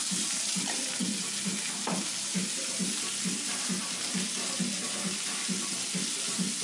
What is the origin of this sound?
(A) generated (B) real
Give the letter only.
B